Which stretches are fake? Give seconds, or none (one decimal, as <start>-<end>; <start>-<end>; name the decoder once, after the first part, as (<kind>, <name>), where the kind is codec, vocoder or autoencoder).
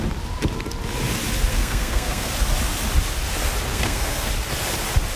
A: 1.5-2.3 (codec, SNAC); 3.7-4.3